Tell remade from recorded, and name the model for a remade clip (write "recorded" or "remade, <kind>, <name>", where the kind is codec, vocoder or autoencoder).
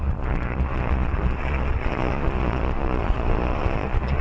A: remade, vocoder, Vocos